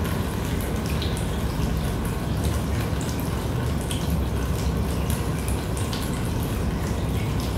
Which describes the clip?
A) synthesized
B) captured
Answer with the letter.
B